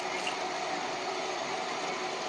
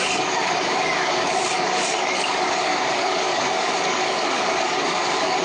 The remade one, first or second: second